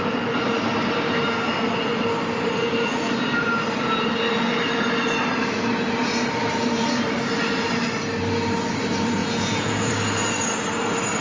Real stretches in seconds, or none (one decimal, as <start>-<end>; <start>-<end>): 0.0-9.2; 9.9-11.2